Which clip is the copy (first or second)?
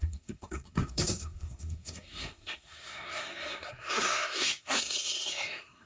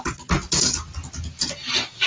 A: first